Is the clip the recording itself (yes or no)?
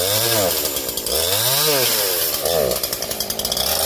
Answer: yes